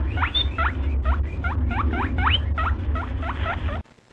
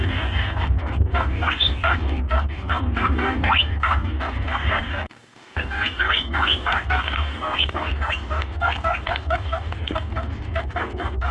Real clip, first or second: first